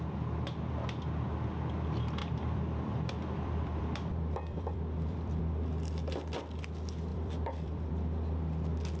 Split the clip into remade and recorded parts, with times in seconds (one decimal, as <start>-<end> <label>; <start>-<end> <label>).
0.0-2.2 recorded; 2.2-5.4 remade; 5.4-7.1 recorded; 7.1-7.9 remade; 7.9-9.0 recorded